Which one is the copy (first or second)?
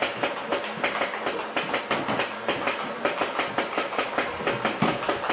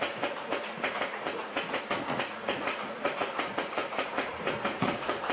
second